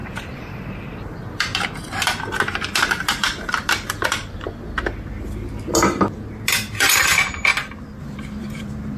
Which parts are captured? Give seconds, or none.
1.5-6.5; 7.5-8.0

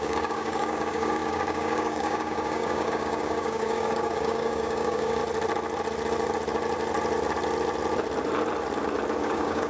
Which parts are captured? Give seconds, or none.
5.2-9.2

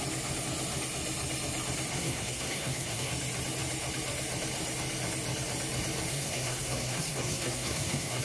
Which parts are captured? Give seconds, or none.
0.0-1.9; 3.1-6.1

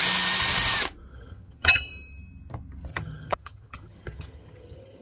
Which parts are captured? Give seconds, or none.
0.0-1.1; 1.9-2.9

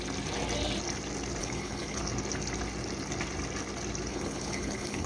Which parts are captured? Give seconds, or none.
0.0-1.4; 2.0-4.1

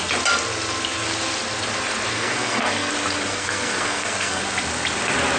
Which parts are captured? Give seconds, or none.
0.0-2.1; 2.9-3.3; 4.4-5.4